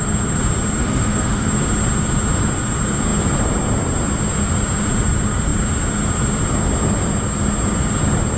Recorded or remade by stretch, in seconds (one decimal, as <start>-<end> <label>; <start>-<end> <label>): 0.0-0.8 recorded; 0.8-1.5 remade; 1.5-8.4 recorded